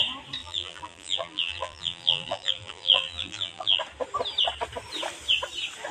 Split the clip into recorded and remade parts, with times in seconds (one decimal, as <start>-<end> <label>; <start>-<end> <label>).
0.0-0.4 recorded; 0.4-3.8 remade; 3.8-5.9 recorded